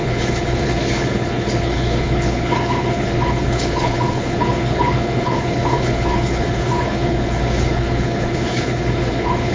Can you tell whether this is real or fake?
fake